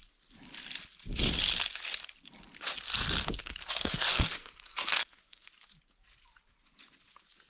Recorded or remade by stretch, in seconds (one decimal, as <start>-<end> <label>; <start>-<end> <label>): 0.0-3.2 recorded; 3.2-5.5 remade; 5.5-7.5 recorded

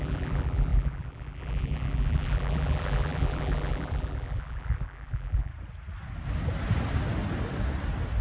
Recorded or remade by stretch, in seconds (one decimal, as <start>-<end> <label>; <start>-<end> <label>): 0.0-5.5 remade; 5.5-8.2 recorded

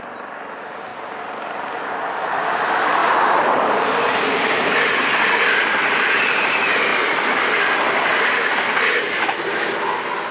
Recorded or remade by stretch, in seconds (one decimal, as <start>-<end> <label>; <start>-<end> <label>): 0.0-3.0 recorded; 3.0-4.8 remade; 4.8-10.3 recorded

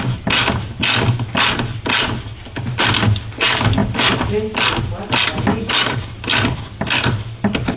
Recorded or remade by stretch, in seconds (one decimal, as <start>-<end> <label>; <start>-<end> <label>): 0.0-5.5 recorded; 5.5-6.1 remade; 6.1-7.8 recorded

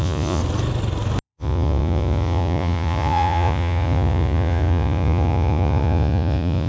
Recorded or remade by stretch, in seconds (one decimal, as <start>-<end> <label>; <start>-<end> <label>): 0.0-0.4 remade; 0.4-1.2 recorded; 1.2-6.7 remade

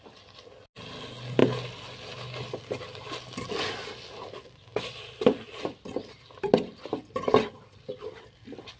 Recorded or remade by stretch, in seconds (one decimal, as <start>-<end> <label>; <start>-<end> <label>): 0.0-1.4 recorded; 1.4-2.6 remade; 2.6-8.8 recorded

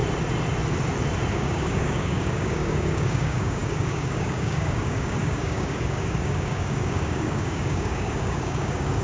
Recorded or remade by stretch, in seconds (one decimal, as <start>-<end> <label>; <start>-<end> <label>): 0.0-1.3 recorded; 1.3-9.0 remade

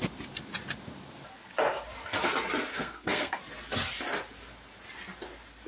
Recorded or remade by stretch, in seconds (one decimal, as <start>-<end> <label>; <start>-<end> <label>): 0.0-2.7 recorded; 2.7-3.4 remade; 3.4-5.7 recorded